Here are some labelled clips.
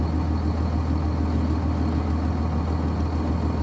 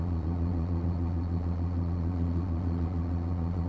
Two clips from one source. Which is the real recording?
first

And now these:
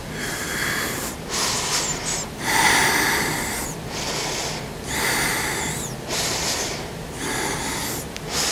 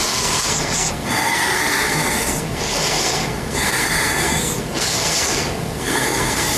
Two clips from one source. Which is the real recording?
first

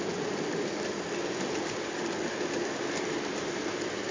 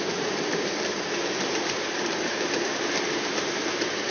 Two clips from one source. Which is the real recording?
first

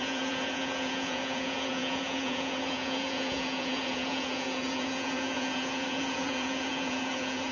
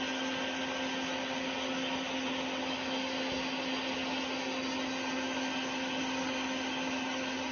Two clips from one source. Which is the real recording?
second